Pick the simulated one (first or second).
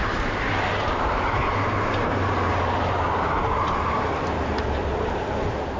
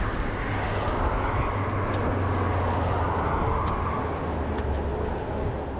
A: first